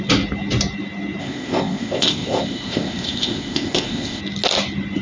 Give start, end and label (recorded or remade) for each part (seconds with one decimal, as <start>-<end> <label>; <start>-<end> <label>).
0.0-1.2 recorded; 1.2-4.2 remade; 4.2-5.0 recorded